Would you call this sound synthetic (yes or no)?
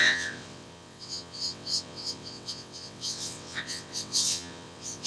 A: yes